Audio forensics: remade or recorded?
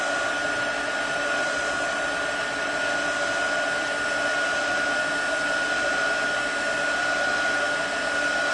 recorded